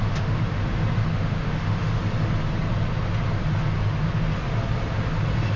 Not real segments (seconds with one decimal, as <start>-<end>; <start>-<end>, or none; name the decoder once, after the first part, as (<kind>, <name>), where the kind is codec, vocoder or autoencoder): 0.0-0.6 (autoencoder, DAC-VAE); 1.1-2.0